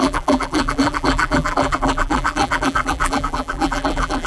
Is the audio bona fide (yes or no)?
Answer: no